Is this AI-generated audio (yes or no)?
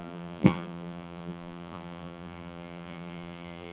yes